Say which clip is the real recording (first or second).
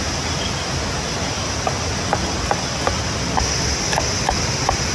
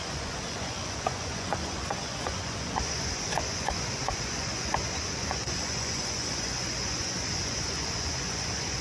first